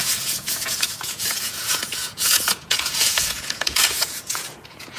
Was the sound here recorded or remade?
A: remade